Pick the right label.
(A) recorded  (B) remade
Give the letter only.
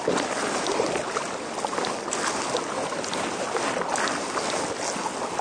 A